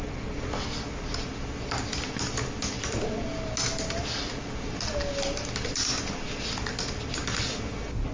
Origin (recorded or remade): recorded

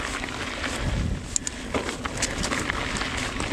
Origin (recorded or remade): recorded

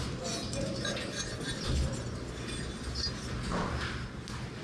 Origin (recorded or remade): recorded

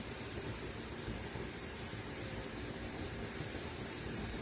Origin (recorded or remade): remade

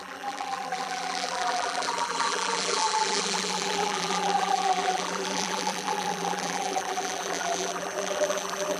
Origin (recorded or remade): remade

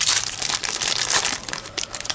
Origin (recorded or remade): remade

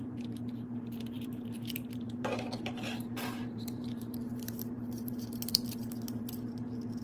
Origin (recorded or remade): remade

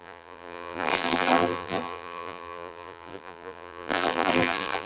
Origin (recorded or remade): remade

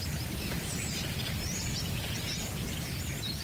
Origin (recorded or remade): recorded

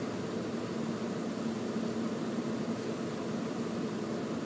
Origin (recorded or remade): recorded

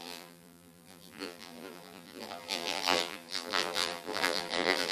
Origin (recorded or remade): remade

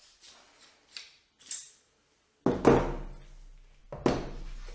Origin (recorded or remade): recorded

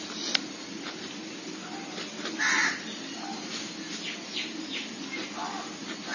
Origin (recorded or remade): recorded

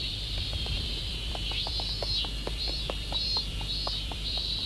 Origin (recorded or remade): remade